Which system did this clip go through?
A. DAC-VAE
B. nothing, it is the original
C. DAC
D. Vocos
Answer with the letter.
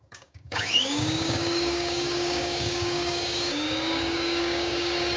C